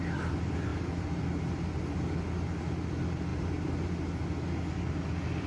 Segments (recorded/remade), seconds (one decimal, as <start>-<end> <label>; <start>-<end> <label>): 0.0-5.5 recorded